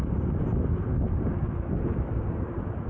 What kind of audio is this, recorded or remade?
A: recorded